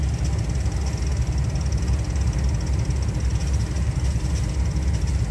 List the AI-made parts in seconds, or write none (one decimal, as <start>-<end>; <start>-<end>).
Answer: none